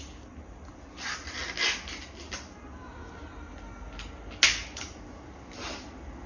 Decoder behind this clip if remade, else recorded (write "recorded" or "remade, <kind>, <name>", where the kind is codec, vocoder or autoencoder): recorded